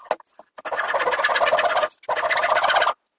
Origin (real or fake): real